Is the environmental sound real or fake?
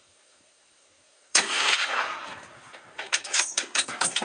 fake